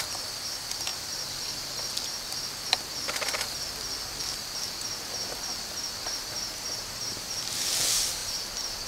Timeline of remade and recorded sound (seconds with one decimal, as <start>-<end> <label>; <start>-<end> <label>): 0.0-8.9 recorded